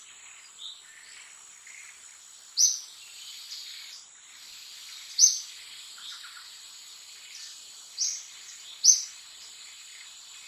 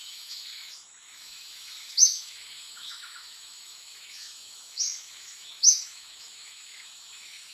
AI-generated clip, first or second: second